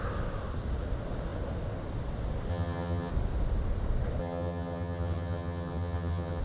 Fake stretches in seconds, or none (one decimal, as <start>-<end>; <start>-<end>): 2.5-3.1; 4.2-6.4